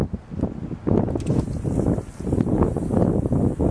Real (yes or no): yes